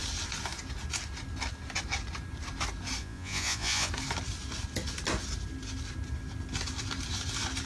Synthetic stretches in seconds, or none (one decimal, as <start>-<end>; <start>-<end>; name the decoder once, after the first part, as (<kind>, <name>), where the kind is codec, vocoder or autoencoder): 3.0-3.9 (vocoder, Vocos)